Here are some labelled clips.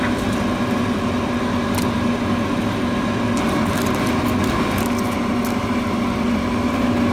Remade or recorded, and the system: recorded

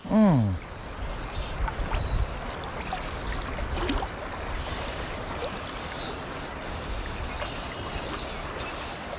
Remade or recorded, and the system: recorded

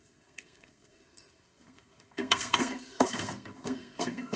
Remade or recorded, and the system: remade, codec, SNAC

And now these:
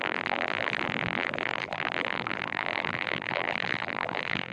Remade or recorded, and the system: remade, vocoder, BigVGAN v2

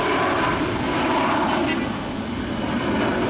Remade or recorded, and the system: recorded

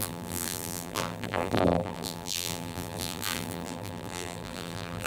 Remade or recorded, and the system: remade, vocoder, BigVGAN v2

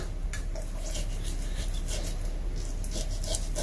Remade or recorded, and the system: recorded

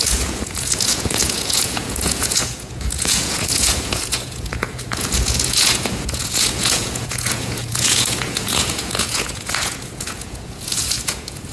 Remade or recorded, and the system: remade, vocoder, Vocos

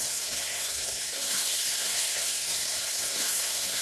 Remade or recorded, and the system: remade, codec, SNAC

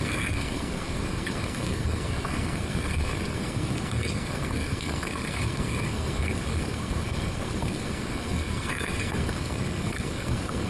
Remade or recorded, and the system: remade, codec, SNAC